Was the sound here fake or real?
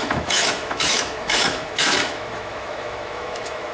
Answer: fake